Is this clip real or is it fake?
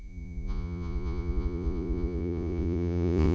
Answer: fake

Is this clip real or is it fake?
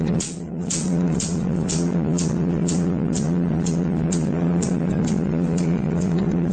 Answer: fake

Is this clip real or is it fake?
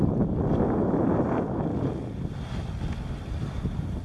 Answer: real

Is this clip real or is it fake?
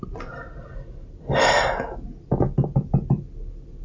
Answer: real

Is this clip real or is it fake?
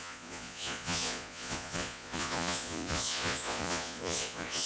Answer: fake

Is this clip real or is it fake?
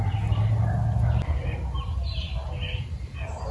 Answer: real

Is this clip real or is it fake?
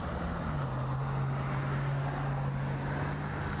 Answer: real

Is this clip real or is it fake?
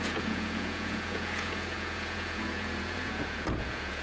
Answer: fake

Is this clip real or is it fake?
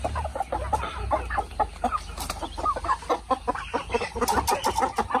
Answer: real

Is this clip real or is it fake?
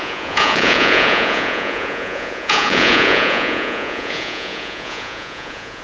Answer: fake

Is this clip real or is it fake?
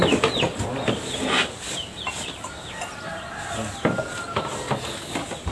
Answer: real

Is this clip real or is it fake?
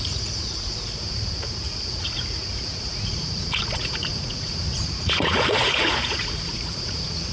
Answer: fake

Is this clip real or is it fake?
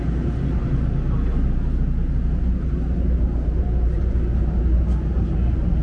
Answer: real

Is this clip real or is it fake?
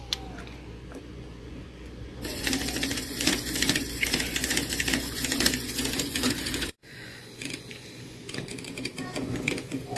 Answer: fake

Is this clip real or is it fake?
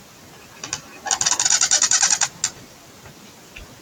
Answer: real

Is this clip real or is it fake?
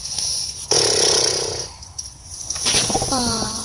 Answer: fake